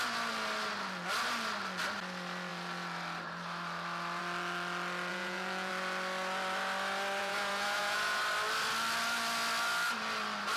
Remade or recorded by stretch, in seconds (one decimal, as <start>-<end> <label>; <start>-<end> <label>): 0.0-5.1 recorded; 5.1-5.7 remade; 5.7-7.2 recorded; 7.2-8.2 remade; 8.2-10.6 recorded

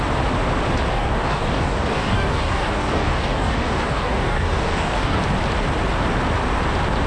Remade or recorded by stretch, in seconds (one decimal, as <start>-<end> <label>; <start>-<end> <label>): 0.0-0.9 recorded; 0.9-5.2 remade; 5.2-7.1 recorded

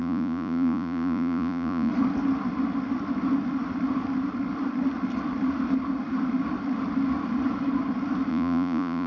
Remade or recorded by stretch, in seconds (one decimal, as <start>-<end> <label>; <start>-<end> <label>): 0.0-1.9 remade; 1.9-8.3 recorded; 8.3-9.1 remade

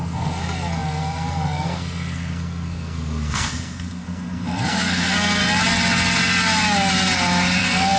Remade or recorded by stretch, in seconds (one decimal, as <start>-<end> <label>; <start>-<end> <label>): 0.0-5.4 remade; 5.4-7.6 recorded; 7.6-8.0 remade

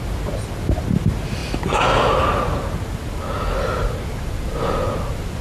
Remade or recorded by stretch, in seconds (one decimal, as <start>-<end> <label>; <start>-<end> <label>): 0.0-5.4 recorded

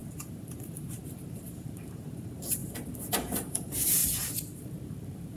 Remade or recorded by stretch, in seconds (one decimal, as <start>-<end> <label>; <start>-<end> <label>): 0.0-4.0 remade; 4.0-4.6 recorded; 4.6-5.4 remade